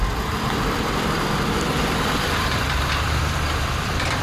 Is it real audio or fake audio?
fake